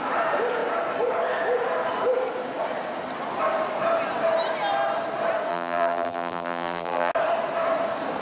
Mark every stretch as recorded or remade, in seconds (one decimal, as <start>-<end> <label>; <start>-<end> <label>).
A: 0.0-5.5 recorded; 5.5-7.1 remade; 7.1-8.2 recorded